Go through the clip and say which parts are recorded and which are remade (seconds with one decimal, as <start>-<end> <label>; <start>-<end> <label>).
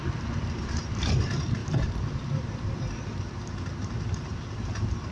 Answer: 0.0-1.6 recorded; 1.6-5.1 remade